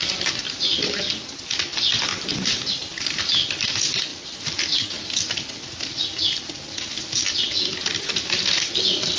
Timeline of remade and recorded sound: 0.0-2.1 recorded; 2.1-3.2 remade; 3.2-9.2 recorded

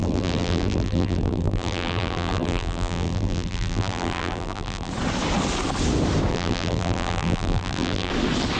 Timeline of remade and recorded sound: 0.0-4.9 remade; 4.9-6.3 recorded; 6.3-8.1 remade; 8.1-8.6 recorded

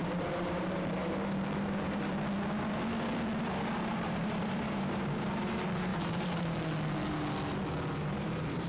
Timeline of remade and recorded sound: 0.0-2.1 remade; 2.1-3.9 recorded; 3.9-7.0 remade; 7.0-8.1 recorded; 8.1-8.7 remade

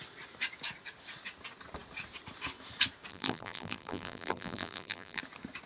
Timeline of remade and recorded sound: 0.0-3.1 recorded; 3.1-5.2 remade; 5.2-5.7 recorded

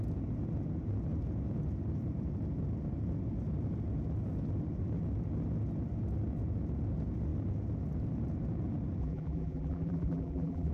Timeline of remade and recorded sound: 0.0-9.0 recorded; 9.0-10.7 remade

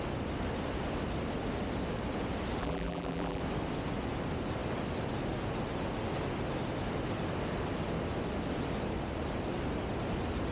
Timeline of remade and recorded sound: 0.0-2.6 recorded; 2.6-3.4 remade; 3.4-10.5 recorded

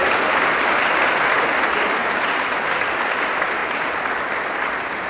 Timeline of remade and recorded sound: 0.0-2.0 recorded; 2.0-2.7 remade; 2.7-3.6 recorded; 3.6-4.2 remade; 4.2-5.1 recorded